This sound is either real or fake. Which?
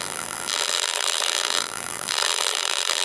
fake